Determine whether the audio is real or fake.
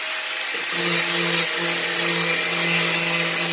real